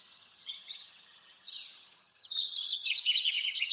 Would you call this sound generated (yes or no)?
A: yes